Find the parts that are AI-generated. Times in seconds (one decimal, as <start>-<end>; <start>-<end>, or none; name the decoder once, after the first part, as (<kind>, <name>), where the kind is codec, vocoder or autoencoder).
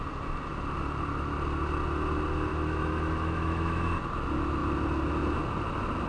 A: 2.5-4.0 (autoencoder, DAC-VAE)